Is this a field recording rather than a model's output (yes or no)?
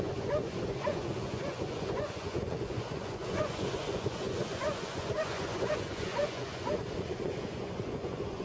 no